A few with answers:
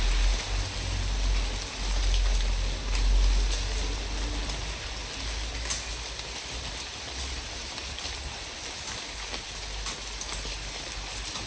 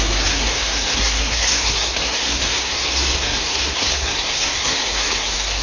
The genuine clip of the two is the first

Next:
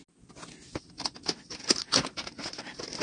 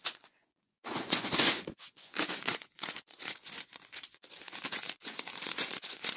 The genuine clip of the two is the first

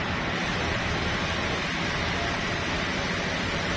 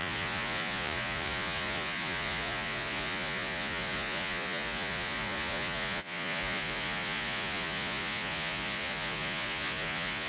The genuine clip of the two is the first